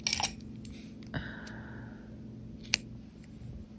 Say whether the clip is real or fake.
real